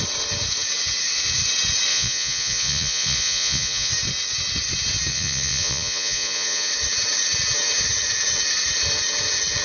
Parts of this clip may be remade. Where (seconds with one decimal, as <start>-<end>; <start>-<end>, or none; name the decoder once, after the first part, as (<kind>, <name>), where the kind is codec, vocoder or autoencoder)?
1.9-3.9 (vocoder, Vocos); 5.1-6.7